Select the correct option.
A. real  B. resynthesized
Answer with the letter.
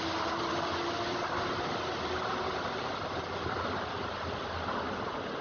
A